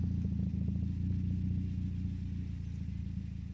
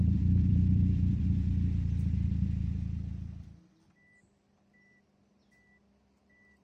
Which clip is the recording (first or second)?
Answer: first